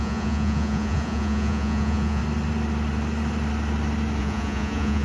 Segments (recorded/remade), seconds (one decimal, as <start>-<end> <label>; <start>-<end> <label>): 0.0-2.2 remade; 2.2-4.2 recorded; 4.2-5.0 remade